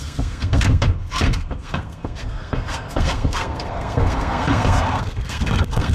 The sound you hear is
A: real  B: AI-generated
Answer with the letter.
B